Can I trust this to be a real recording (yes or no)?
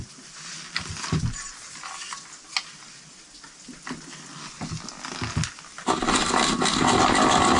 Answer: yes